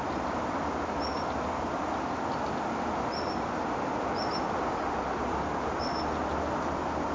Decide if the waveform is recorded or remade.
recorded